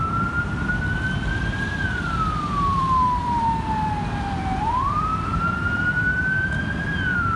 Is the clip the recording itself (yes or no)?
no